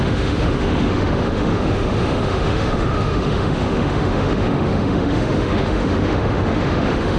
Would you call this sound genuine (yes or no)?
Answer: no